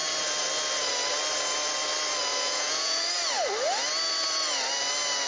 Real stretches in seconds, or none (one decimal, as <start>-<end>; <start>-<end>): 0.0-2.3; 3.1-5.3